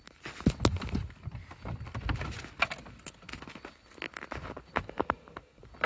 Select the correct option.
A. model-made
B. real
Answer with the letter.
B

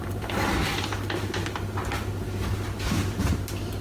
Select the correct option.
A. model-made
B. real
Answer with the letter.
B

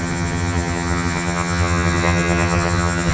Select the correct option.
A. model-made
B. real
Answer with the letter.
A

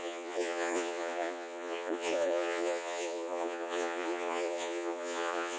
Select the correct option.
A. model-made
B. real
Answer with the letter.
A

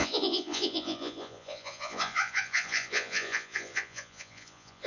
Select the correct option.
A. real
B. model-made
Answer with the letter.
B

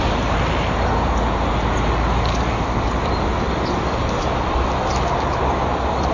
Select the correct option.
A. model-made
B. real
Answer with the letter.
B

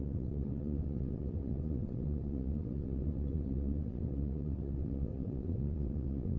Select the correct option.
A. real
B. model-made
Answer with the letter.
B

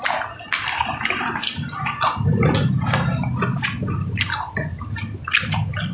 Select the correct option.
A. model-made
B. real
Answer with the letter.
B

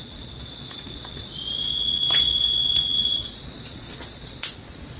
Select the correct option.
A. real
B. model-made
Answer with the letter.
B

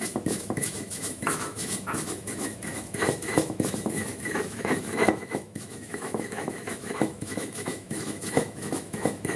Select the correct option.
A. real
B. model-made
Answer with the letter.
B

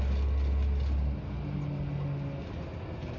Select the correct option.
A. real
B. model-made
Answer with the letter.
A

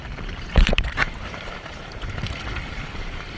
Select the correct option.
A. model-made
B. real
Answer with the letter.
A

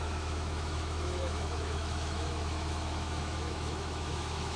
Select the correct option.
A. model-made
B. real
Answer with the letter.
A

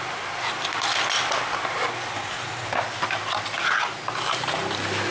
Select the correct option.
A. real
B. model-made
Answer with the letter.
A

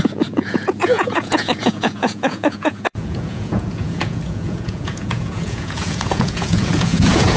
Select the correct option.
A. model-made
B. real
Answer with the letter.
A